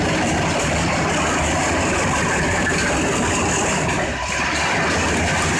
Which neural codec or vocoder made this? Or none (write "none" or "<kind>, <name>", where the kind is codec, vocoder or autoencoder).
none